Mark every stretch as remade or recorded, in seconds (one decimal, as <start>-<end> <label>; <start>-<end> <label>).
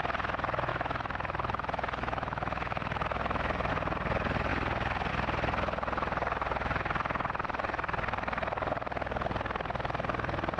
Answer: 0.0-0.7 recorded; 0.7-3.7 remade; 3.7-10.6 recorded